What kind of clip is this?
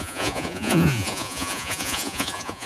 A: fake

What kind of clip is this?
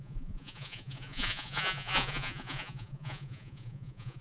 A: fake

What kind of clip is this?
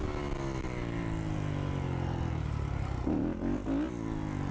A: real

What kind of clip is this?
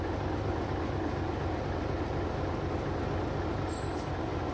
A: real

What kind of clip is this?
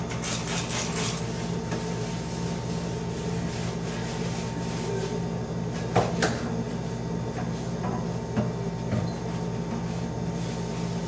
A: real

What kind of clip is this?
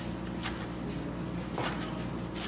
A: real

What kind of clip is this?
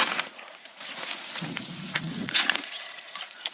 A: fake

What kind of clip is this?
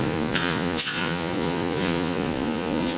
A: fake